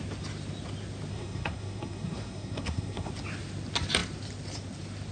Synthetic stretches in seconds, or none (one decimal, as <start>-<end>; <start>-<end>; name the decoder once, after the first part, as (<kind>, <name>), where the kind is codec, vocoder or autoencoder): 1.1-3.1 (codec, SNAC)